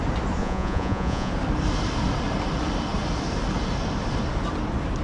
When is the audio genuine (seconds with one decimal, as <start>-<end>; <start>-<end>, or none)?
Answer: 0.0-0.4; 1.3-5.0